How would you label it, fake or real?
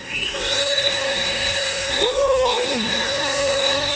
fake